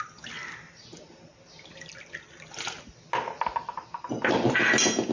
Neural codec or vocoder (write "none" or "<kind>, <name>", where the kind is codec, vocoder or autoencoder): none